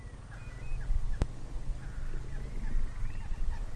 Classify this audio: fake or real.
real